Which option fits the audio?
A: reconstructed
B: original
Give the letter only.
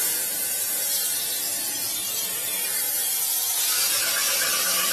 B